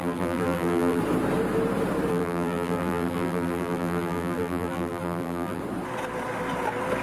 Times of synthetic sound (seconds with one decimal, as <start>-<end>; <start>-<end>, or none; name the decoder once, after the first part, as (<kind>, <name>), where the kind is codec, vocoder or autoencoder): 0.0-1.0 (vocoder, BigVGAN v2); 2.1-5.6